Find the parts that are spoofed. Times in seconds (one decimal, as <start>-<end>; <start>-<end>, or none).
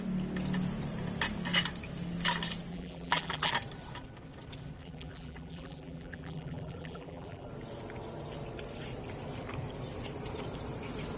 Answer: 2.7-3.5; 4.8-7.5